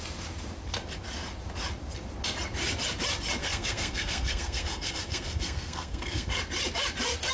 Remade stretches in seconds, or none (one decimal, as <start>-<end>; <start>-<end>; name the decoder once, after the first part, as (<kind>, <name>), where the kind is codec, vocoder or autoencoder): 3.4-6.4 (codec, SNAC)